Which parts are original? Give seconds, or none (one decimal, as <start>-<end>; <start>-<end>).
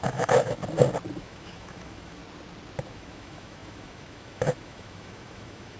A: 0.6-1.2; 2.2-2.9